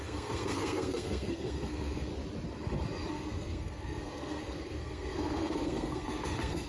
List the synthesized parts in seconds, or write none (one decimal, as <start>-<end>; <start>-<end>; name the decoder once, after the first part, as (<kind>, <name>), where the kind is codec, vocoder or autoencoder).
0.0-2.1 (codec, SNAC); 3.1-6.7